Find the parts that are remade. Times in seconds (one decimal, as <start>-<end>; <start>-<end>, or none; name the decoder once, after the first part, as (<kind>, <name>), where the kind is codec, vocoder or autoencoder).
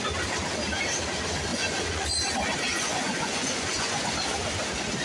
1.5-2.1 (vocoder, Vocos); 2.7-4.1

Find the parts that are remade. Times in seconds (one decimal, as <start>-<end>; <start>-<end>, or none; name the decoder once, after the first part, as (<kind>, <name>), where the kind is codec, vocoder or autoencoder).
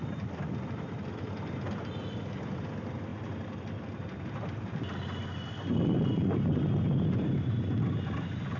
none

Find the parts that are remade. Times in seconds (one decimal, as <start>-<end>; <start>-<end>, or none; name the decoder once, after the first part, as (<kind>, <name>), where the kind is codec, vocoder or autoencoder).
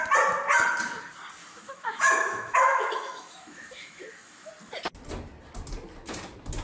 1.4-4.5 (autoencoder, DAC-VAE)